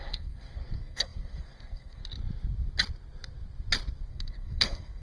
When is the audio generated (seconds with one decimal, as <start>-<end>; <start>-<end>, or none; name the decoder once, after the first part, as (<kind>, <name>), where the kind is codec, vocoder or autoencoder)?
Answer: 0.0-2.0 (codec, SNAC); 4.1-5.0